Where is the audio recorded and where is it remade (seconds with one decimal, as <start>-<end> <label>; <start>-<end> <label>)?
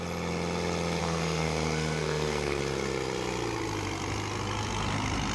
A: 0.0-1.0 recorded; 1.0-2.6 remade; 2.6-5.3 recorded